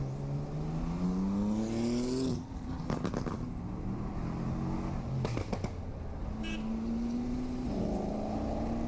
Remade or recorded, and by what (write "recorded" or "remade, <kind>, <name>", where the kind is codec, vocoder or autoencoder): recorded